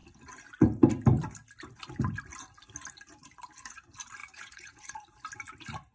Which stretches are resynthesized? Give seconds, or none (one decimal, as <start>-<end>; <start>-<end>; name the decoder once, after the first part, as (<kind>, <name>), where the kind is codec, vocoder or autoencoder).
4.2-4.9 (vocoder, Vocos)